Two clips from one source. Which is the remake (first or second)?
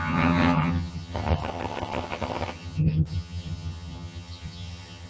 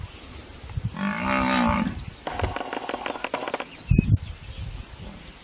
first